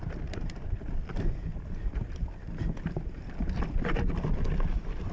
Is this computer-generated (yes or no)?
no